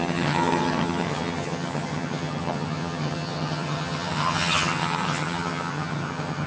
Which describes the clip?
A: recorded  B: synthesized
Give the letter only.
B